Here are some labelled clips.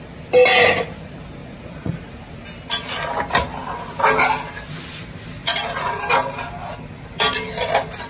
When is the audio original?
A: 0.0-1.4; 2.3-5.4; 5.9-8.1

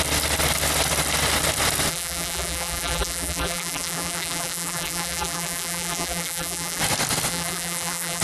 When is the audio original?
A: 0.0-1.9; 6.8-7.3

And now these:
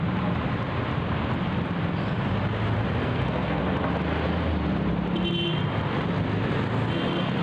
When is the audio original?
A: 0.0-3.0; 3.6-7.4

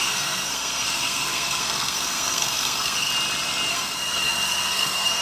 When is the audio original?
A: 3.1-3.7

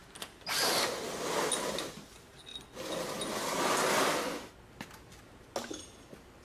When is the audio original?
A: 0.0-6.4

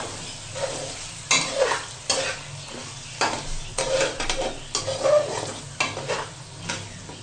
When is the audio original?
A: 0.0-7.2

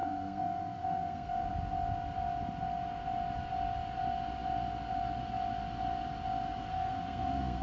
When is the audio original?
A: 1.5-6.7